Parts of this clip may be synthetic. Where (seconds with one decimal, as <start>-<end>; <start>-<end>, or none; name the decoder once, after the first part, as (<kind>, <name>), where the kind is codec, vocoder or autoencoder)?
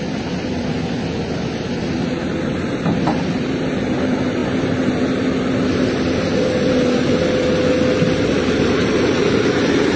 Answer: none